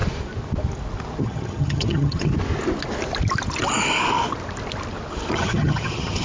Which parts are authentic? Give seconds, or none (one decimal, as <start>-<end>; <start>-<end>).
0.0-1.2; 2.3-5.3